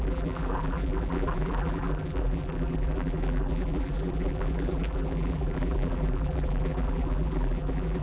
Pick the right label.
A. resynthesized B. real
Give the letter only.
A